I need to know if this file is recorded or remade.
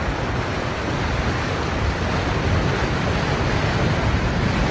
recorded